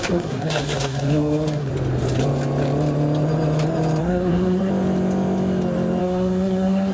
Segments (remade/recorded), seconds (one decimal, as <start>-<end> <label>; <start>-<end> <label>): 0.0-1.7 remade; 1.7-4.0 recorded; 4.0-4.7 remade; 4.7-6.0 recorded; 6.0-6.9 remade